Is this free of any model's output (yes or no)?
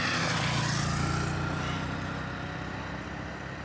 yes